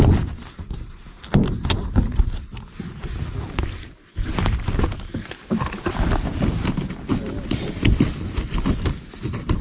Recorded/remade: recorded